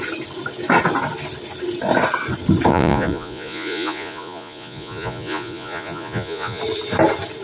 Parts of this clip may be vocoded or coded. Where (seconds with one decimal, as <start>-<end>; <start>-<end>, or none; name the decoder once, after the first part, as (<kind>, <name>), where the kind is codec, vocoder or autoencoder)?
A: 2.7-6.6 (vocoder, Vocos)

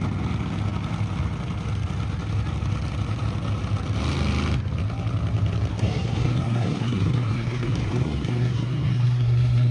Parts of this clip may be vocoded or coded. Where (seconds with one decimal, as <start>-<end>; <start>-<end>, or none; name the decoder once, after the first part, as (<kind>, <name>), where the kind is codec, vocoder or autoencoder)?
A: 5.7-9.7 (codec, SNAC)

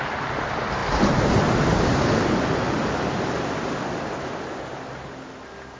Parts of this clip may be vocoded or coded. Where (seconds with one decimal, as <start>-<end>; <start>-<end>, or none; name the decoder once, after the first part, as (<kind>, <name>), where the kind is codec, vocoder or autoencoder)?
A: none

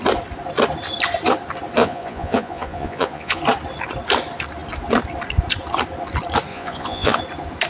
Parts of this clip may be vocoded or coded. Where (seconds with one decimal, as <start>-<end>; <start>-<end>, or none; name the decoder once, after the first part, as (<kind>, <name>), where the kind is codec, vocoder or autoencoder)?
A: 1.8-3.4 (vocoder, Vocos); 6.5-7.2

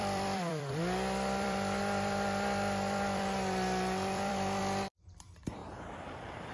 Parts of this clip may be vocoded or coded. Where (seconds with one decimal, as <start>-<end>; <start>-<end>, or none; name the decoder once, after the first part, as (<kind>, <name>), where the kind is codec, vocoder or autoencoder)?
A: 0.0-5.6 (vocoder, BigVGAN v2); 6.1-6.5

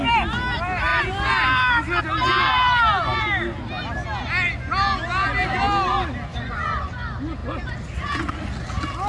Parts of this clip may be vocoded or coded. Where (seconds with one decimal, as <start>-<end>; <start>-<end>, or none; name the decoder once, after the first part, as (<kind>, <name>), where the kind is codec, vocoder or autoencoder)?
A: 6.3-6.9 (vocoder, Vocos)